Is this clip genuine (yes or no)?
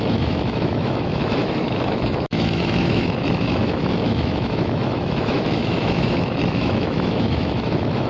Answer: no